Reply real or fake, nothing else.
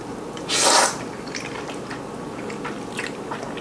real